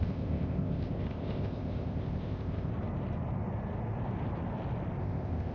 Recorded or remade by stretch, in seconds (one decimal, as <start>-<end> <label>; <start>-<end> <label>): 0.0-2.7 remade; 2.7-5.0 recorded; 5.0-5.5 remade